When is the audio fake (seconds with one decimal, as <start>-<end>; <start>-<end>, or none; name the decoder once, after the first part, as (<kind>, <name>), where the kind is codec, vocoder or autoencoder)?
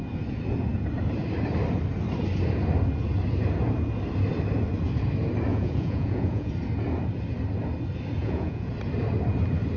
5.5-6.5 (vocoder, Vocos); 8.2-8.7